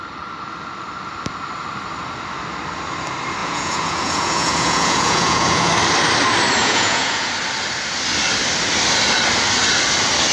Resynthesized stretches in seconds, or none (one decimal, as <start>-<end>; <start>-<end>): 3.4-5.7; 6.6-7.3